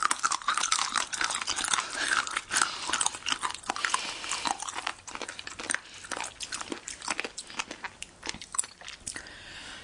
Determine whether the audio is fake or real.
real